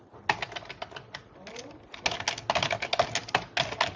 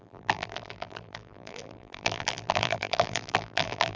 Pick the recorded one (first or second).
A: first